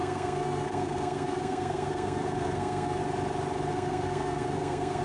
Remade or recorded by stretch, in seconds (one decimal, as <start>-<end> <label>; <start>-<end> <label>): 0.0-3.0 remade; 3.0-3.7 recorded; 3.7-5.0 remade